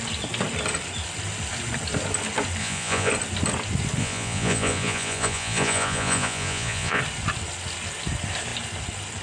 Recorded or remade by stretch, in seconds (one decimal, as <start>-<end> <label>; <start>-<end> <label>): 0.0-2.6 recorded; 2.6-3.1 remade; 3.1-4.0 recorded; 4.0-7.0 remade; 7.0-9.2 recorded